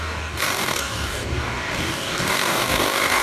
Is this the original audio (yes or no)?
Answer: no